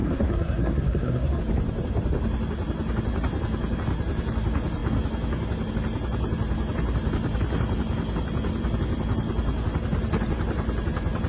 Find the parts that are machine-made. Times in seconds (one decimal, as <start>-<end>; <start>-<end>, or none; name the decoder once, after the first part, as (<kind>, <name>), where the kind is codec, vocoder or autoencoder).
0.0-1.4 (codec, SNAC)